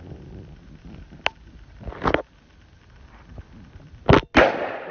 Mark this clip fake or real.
real